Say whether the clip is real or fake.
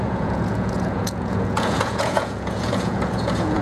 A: fake